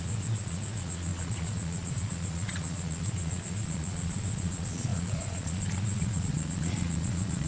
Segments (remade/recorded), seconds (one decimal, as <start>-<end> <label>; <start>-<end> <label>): 0.0-7.5 remade